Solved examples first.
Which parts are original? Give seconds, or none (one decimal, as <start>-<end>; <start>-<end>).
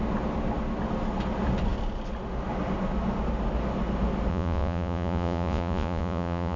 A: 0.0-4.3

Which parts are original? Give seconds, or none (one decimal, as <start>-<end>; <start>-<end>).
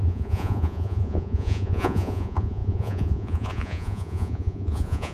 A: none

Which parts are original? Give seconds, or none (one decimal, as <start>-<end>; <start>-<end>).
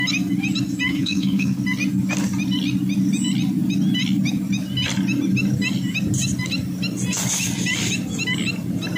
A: 0.0-0.9; 1.6-9.0